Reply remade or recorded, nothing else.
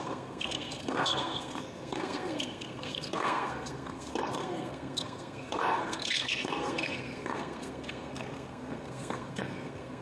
remade